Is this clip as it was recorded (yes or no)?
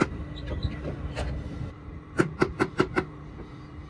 no